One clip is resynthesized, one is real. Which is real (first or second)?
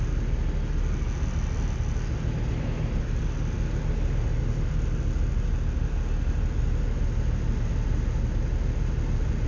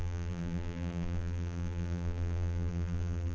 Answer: first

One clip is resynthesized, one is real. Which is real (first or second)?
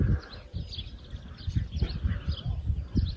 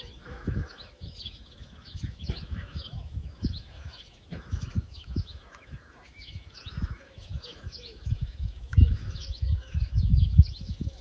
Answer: first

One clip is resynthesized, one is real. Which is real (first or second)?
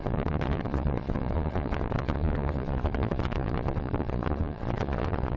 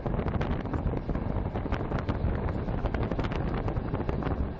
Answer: second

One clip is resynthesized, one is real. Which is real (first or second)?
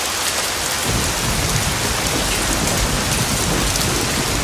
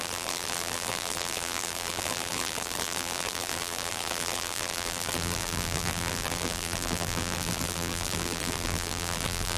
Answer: first